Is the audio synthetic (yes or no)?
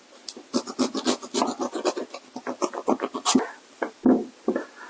no